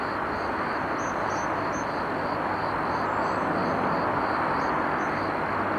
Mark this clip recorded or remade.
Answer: recorded